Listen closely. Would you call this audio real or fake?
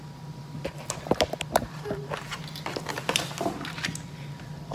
real